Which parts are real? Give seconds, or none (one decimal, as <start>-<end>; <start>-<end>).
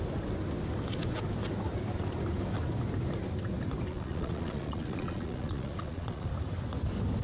0.0-3.9; 6.3-7.2